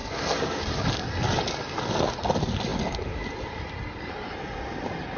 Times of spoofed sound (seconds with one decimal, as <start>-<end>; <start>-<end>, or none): 0.0-0.6